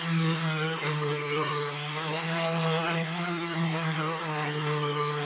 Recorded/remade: remade